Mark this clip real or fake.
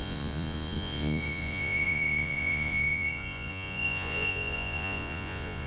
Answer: fake